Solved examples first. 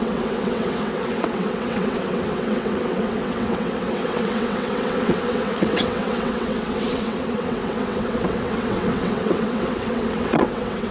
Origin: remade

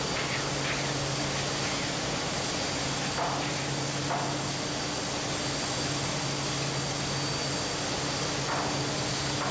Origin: recorded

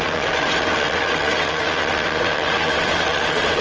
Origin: remade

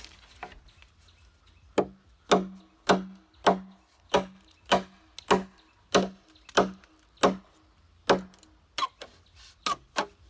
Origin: recorded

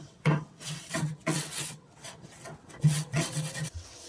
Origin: remade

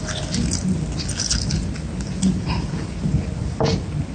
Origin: recorded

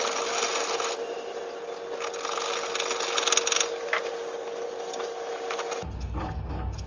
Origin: recorded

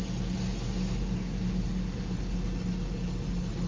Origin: recorded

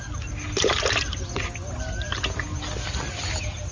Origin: recorded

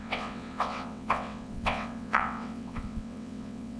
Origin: remade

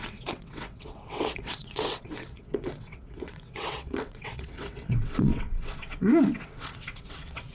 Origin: remade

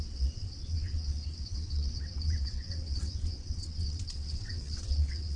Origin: remade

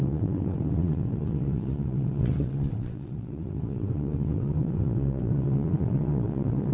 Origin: remade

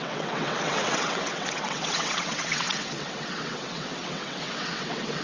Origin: remade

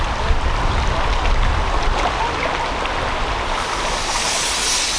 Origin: recorded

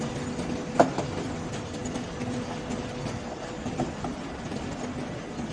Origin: recorded